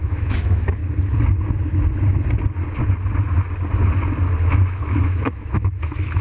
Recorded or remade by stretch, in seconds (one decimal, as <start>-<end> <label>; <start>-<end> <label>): 0.0-0.8 remade; 0.8-4.5 recorded; 4.5-6.2 remade